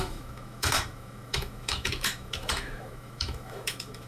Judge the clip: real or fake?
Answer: fake